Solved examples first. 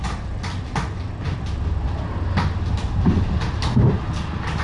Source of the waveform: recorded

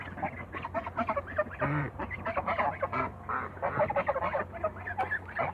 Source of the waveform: recorded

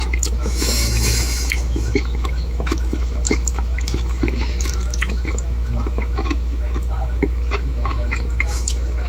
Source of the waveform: remade